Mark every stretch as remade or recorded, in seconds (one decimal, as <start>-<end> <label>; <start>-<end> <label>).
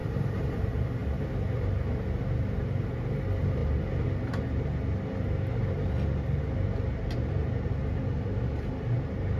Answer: 0.0-0.6 remade; 0.6-9.4 recorded